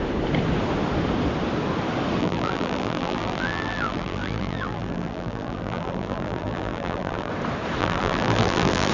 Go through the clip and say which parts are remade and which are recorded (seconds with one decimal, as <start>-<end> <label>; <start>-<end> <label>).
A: 0.0-2.2 recorded; 2.2-7.3 remade; 7.3-7.8 recorded; 7.8-8.9 remade